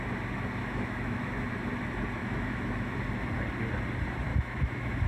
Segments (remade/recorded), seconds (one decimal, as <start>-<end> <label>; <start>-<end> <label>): 0.0-0.6 recorded; 0.6-1.5 remade; 1.5-2.2 recorded; 2.2-3.0 remade; 3.0-4.3 recorded; 4.3-5.1 remade